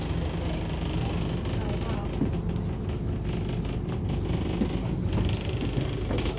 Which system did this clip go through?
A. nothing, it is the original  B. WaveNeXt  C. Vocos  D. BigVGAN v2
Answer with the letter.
A